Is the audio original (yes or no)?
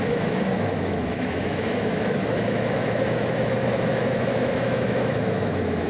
no